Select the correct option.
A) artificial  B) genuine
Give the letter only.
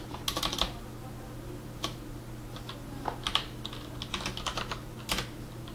B